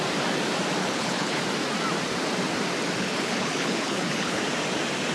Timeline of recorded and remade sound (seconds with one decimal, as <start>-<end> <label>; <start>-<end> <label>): 0.0-0.8 recorded; 0.8-1.4 remade; 1.4-3.0 recorded; 3.0-4.4 remade; 4.4-5.1 recorded